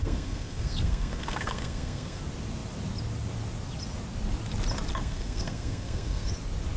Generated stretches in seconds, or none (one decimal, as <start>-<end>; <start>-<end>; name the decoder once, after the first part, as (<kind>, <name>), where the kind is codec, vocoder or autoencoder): 0.0-2.2 (codec, SNAC); 5.0-6.3